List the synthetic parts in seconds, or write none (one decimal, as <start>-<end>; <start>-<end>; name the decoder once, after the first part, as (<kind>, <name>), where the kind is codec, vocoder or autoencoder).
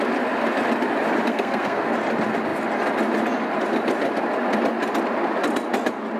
1.3-1.9 (codec, SNAC)